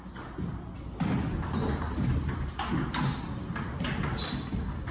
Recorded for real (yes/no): yes